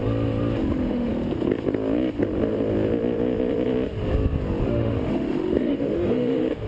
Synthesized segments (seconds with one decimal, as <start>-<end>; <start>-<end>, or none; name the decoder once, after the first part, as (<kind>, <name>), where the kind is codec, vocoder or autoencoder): 0.7-1.1 (autoencoder, DAC-VAE); 4.6-6.7